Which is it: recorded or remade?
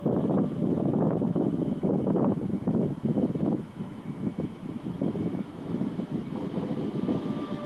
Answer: remade